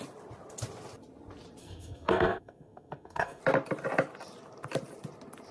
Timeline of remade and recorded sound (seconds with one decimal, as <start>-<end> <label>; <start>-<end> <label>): 0.0-1.6 recorded; 1.6-3.4 remade; 3.4-5.5 recorded